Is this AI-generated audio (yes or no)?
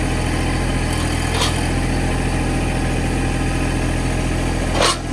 no